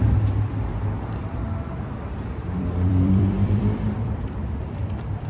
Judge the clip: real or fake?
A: fake